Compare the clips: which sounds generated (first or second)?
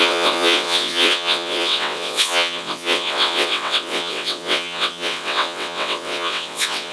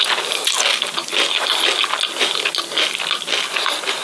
first